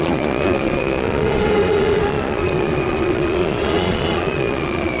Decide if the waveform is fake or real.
fake